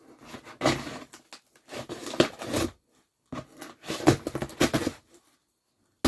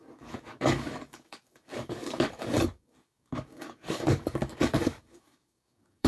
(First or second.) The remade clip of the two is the second